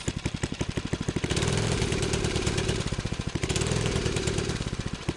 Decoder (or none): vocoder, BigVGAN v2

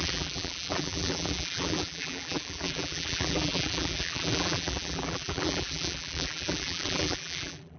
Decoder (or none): vocoder, BigVGAN v2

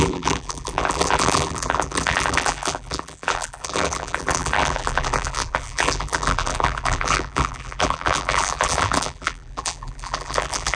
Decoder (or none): vocoder, BigVGAN v2